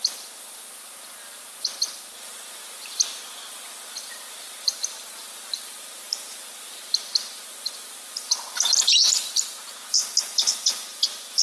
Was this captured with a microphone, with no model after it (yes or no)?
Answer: yes